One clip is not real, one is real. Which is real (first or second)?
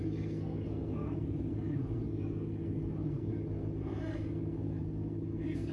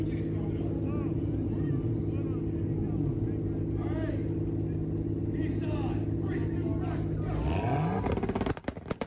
second